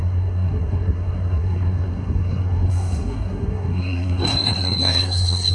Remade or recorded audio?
remade